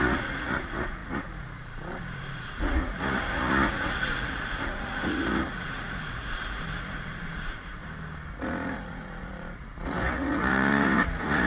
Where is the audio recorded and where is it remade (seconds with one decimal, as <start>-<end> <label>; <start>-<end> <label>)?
0.0-7.8 remade; 7.8-8.3 recorded; 8.3-11.5 remade